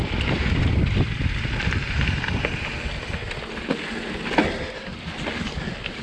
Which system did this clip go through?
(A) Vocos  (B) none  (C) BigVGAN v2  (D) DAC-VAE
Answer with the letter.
B